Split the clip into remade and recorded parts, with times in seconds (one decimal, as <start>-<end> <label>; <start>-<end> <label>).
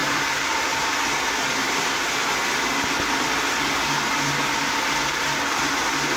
0.0-0.9 remade; 0.9-6.2 recorded